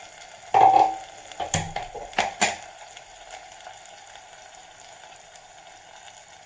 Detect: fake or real real